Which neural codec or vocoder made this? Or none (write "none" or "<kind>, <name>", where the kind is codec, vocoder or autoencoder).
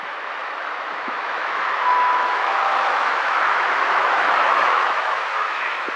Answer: autoencoder, DAC-VAE